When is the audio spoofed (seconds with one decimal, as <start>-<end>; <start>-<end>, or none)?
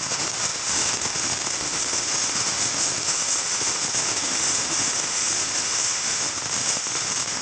0.0-7.4